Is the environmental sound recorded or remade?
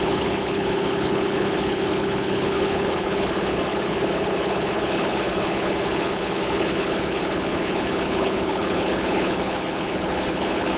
remade